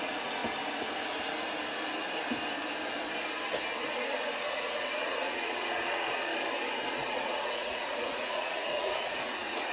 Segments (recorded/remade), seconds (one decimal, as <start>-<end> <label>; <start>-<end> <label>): 0.0-0.4 remade; 0.4-4.5 recorded; 4.5-6.3 remade; 6.3-6.9 recorded; 6.9-9.7 remade